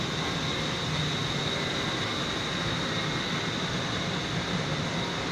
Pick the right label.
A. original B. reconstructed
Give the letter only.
A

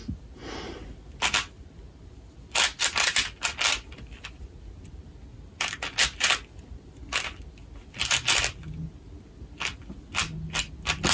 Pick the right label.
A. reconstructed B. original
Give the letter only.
B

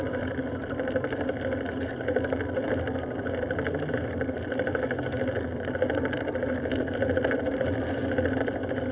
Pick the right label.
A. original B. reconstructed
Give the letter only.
A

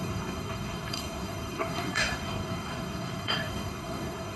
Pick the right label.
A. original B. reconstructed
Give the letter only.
B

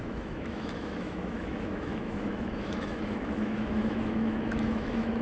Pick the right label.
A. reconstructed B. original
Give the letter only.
A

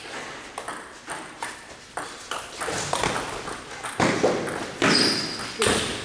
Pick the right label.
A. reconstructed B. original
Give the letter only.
B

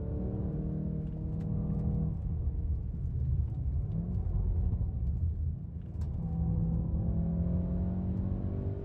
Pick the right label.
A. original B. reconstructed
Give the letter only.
A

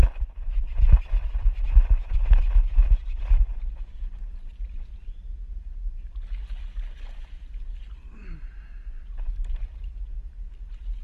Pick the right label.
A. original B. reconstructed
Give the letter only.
A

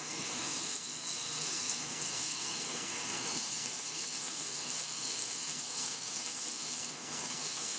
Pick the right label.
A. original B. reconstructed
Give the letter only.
B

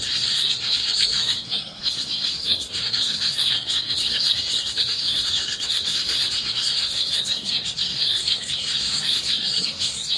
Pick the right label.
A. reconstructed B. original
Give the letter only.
A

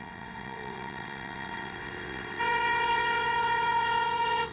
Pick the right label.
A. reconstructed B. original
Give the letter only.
A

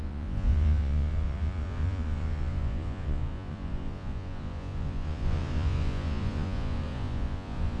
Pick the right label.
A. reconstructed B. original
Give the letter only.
A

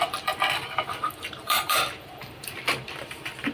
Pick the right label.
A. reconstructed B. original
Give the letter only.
A